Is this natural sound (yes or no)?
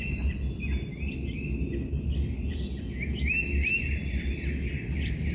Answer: yes